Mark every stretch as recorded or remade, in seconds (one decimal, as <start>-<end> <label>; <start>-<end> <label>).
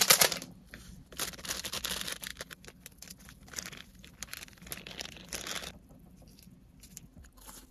0.0-7.7 recorded